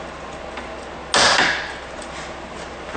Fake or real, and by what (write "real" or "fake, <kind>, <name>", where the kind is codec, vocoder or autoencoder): real